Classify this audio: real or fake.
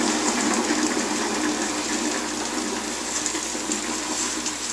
real